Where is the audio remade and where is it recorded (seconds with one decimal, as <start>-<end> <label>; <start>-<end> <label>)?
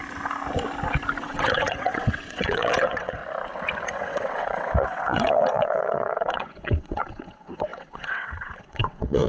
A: 0.0-1.2 recorded; 1.2-3.2 remade; 3.2-3.9 recorded; 3.9-9.3 remade